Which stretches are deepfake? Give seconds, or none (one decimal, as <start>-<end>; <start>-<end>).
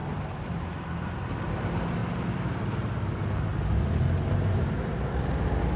none